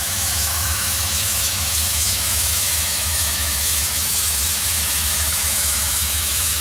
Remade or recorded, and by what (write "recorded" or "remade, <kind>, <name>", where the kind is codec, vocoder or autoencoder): remade, autoencoder, DAC-VAE